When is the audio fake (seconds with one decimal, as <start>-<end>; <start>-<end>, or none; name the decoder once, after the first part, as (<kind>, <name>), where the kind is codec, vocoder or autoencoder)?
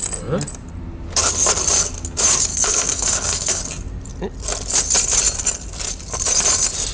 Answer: 2.5-3.6 (codec, SNAC)